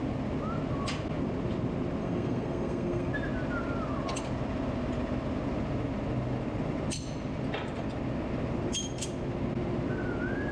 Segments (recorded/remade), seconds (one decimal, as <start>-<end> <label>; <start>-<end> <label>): 0.0-2.0 recorded; 2.0-3.1 remade; 3.1-10.5 recorded